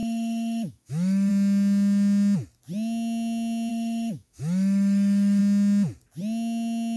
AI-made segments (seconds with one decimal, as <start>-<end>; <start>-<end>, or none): 0.0-1.3; 3.7-5.4